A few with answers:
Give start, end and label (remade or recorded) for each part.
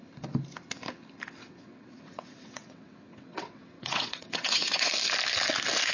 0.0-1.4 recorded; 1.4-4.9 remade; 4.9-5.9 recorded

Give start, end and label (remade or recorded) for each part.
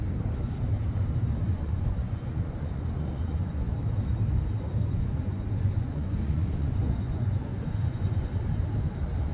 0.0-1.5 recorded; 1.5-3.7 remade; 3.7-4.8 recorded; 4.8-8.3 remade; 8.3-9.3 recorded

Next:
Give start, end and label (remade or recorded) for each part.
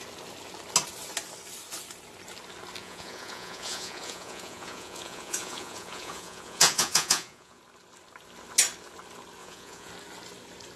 0.0-2.8 recorded; 2.8-7.6 remade; 7.6-9.4 recorded; 9.4-9.9 remade; 9.9-10.8 recorded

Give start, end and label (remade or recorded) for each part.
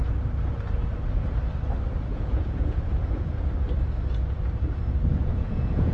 0.0-2.1 recorded; 2.1-3.5 remade; 3.5-5.2 recorded; 5.2-5.9 remade